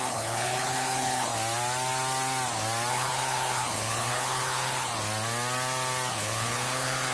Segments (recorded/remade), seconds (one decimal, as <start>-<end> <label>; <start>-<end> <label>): 0.0-1.3 remade; 1.3-2.9 recorded; 2.9-4.9 remade; 4.9-6.1 recorded; 6.1-7.1 remade